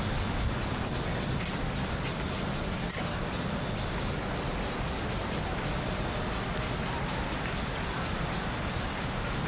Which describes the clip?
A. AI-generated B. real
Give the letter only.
B